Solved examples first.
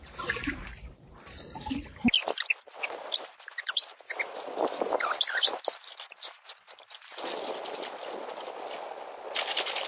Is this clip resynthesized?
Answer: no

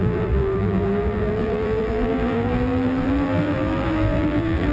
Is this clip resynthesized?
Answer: yes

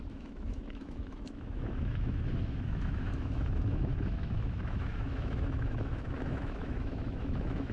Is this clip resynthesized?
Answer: yes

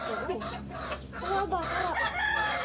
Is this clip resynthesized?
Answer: no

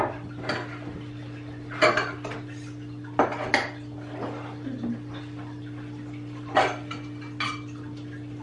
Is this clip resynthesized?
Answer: no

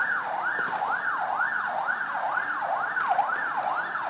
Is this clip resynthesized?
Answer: no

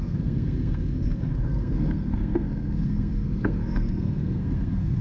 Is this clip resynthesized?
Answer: yes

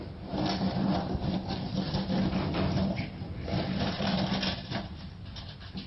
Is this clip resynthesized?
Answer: no